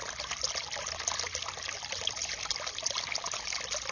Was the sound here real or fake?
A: real